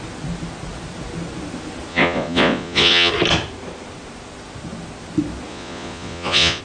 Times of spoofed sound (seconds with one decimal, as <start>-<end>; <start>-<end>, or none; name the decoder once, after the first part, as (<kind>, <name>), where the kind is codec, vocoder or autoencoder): 1.9-3.1 (vocoder, Vocos); 5.5-6.6